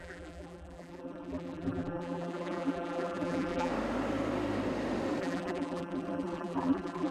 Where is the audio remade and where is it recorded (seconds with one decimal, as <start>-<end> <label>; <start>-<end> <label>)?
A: 0.0-3.7 remade; 3.7-5.2 recorded; 5.2-7.1 remade